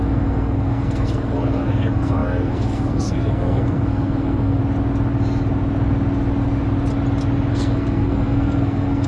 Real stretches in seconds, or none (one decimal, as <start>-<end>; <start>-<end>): 4.6-7.5